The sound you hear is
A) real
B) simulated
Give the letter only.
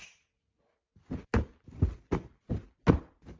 A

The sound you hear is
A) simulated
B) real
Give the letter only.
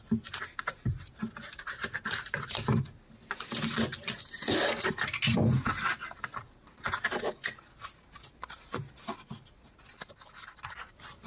B